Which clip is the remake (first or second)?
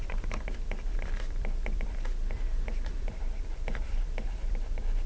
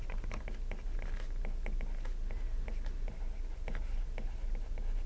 first